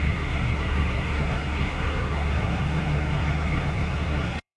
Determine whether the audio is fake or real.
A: fake